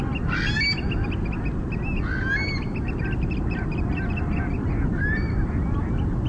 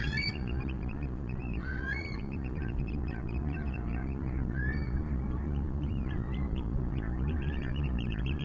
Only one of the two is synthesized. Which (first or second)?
second